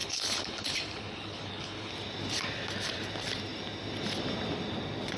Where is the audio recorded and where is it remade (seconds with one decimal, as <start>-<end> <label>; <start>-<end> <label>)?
0.0-1.9 remade; 1.9-5.2 recorded